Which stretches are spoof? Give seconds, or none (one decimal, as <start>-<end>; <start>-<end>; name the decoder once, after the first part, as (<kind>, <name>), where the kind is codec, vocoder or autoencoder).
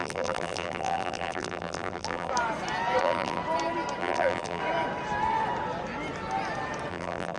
0.0-2.3 (vocoder, BigVGAN v2); 3.0-3.4; 4.0-4.6; 6.9-7.4